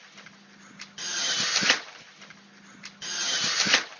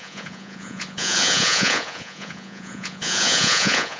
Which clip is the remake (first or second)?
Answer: second